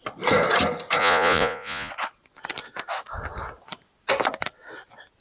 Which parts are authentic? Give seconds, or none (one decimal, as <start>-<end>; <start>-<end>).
0.0-1.0; 1.9-5.2